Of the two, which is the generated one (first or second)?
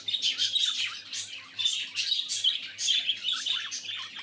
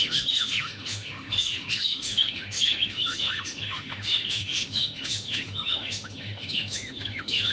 second